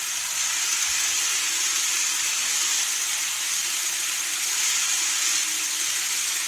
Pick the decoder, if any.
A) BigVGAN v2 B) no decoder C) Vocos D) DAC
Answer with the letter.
B